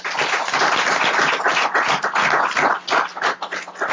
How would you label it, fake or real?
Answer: real